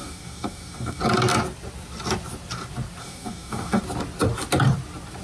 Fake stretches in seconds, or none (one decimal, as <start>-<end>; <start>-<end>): 0.0-1.0; 3.0-3.8